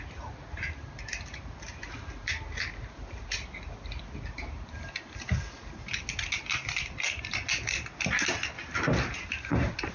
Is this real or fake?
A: real